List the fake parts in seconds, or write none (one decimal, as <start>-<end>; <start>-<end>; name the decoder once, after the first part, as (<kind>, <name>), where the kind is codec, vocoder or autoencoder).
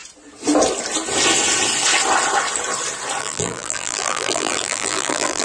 3.2-5.4 (vocoder, BigVGAN v2)